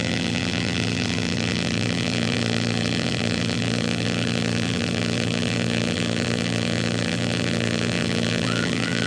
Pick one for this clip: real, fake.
fake